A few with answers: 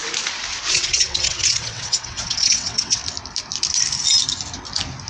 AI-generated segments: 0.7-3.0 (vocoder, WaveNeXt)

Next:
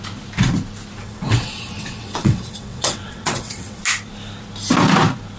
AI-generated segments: 1.0-3.8 (vocoder, WaveNeXt)

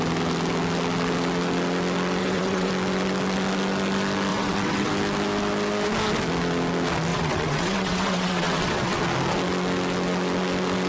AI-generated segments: 2.2-2.7 (vocoder, WaveNeXt); 4.3-4.9; 7.1-9.0

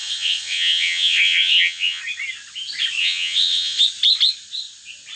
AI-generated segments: 0.0-2.0 (vocoder, WaveNeXt); 3.0-3.8

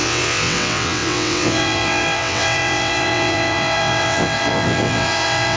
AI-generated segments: 0.0-5.6 (vocoder, WaveNeXt)

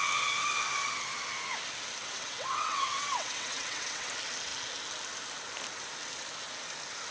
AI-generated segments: 2.0-4.1 (vocoder, WaveNeXt)

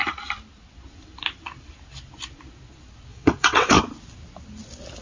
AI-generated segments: 3.1-3.8 (vocoder, WaveNeXt)

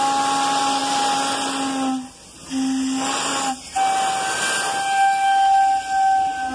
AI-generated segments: none